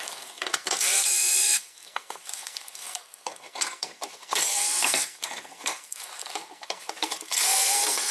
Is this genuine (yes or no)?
no